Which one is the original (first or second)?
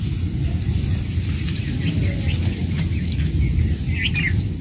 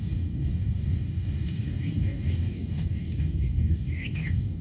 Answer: first